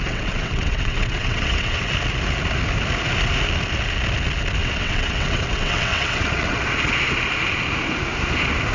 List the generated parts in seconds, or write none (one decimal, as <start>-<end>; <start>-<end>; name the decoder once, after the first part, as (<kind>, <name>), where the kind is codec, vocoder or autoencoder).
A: 0.0-1.9 (vocoder, WaveNeXt); 4.6-6.6